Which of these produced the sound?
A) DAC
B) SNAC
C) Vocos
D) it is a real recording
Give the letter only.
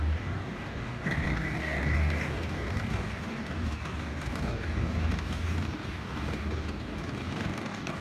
A